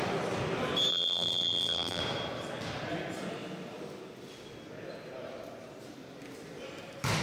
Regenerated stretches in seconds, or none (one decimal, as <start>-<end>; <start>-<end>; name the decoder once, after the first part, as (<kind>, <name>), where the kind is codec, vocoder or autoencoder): 0.9-2.0 (vocoder, BigVGAN v2)